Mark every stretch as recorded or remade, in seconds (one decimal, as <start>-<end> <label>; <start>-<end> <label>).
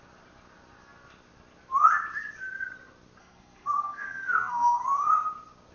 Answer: 0.0-3.2 recorded; 3.2-4.8 remade; 4.8-5.7 recorded